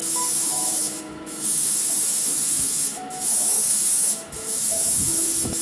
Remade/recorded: remade